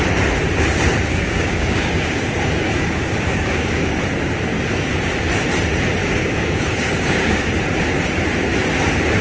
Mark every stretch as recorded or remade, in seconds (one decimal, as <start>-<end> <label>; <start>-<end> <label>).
0.0-1.1 recorded; 1.1-3.9 remade; 3.9-6.0 recorded; 6.0-7.5 remade; 7.5-9.2 recorded